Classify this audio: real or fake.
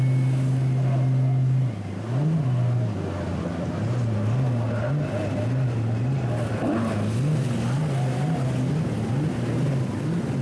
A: real